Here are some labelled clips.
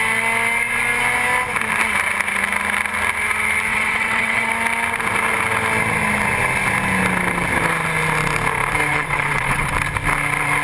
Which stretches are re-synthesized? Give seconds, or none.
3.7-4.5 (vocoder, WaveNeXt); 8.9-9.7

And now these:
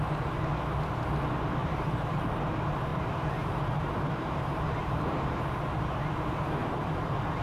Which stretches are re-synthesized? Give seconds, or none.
1.6-2.2 (vocoder, BigVGAN v2); 2.9-5.4

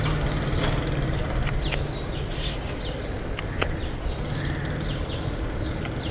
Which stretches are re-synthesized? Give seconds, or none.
none

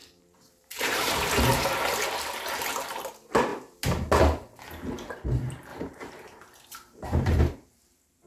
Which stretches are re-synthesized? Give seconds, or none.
0.0-1.1 (vocoder, BigVGAN v2); 5.7-7.4

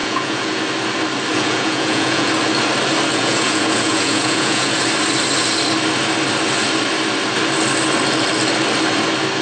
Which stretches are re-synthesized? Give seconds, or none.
0.0-0.6 (vocoder, Vocos); 1.3-2.3; 3.1-4.8